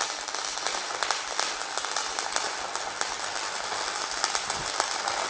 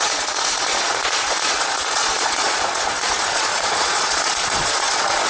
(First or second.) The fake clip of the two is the second